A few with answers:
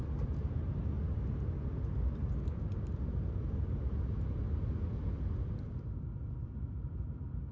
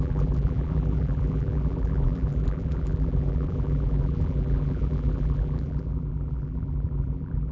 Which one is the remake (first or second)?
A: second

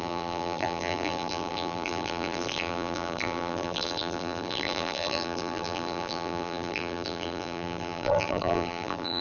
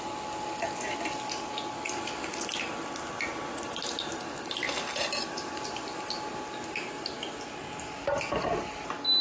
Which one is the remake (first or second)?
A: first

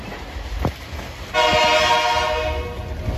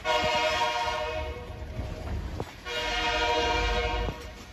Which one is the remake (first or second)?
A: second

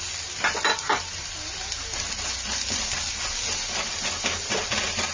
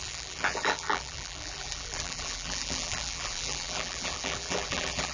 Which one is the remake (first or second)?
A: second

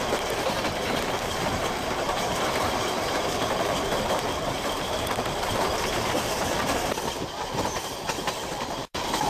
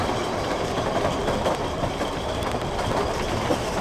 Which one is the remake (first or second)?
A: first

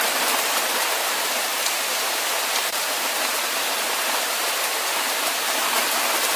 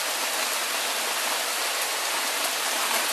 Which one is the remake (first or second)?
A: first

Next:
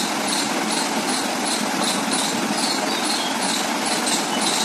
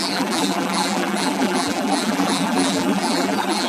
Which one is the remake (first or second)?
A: second